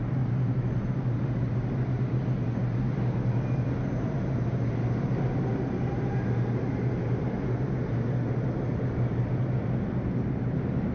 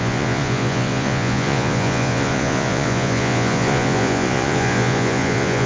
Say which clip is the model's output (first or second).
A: second